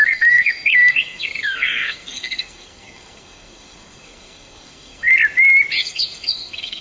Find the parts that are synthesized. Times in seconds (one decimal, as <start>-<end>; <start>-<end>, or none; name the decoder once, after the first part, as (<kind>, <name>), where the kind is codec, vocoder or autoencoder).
0.0-5.1 (codec, SNAC); 5.8-6.8